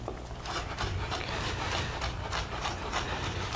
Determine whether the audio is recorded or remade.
recorded